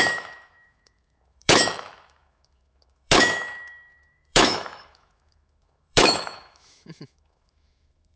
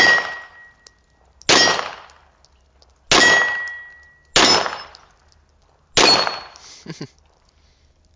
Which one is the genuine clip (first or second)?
second